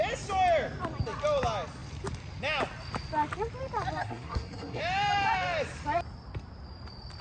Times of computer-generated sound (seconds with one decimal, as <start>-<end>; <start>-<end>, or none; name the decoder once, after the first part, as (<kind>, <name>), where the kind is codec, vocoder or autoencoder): 4.0-4.8 (codec, SNAC)